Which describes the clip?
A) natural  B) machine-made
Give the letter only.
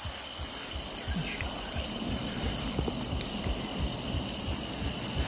B